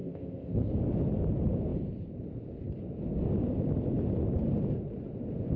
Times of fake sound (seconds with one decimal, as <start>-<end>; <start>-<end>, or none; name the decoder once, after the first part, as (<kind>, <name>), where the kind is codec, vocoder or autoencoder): 0.0-0.6 (codec, ZipCodec)